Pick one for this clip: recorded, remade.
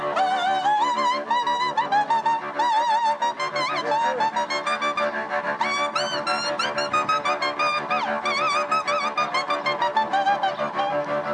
recorded